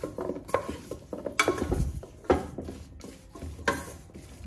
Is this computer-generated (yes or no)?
no